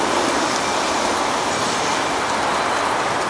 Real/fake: real